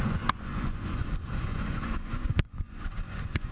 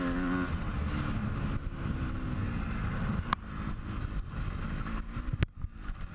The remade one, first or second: first